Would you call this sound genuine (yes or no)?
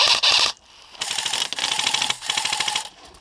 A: yes